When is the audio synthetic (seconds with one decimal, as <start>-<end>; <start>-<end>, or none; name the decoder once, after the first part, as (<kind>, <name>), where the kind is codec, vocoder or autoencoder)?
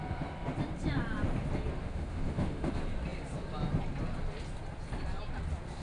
1.8-2.7 (autoencoder, DAC-VAE)